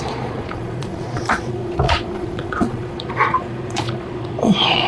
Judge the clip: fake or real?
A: fake